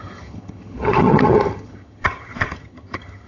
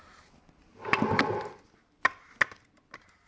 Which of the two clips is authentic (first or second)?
second